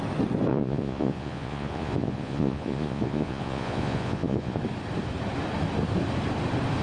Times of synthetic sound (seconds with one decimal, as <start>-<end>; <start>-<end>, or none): 0.5-4.6